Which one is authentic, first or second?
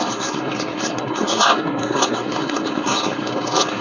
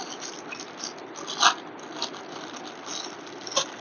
second